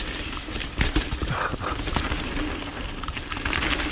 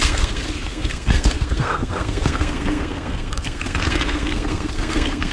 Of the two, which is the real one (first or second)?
first